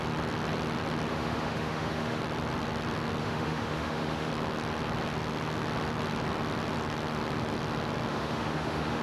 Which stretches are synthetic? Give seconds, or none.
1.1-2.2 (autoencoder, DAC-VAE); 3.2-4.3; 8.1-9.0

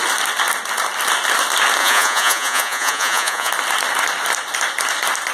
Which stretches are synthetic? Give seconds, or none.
1.8-3.5 (vocoder, Vocos)

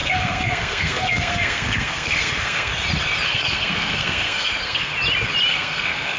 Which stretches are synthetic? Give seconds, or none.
0.0-2.7 (codec, SNAC); 3.3-4.9; 5.5-6.2

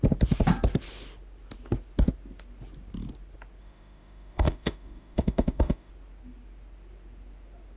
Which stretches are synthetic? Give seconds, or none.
3.6-5.9 (autoencoder, DAC-VAE)

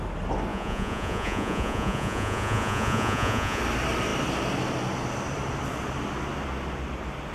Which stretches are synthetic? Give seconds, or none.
0.5-3.6 (vocoder, Vocos)

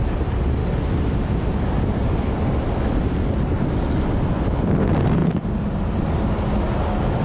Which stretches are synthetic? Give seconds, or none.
none

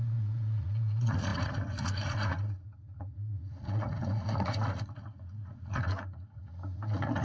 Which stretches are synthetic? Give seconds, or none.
0.0-7.2 (vocoder, Vocos)